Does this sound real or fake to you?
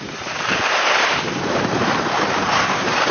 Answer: fake